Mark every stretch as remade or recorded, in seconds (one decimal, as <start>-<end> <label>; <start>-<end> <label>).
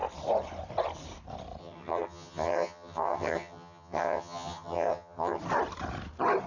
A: 0.0-1.6 recorded; 1.6-5.4 remade; 5.4-6.5 recorded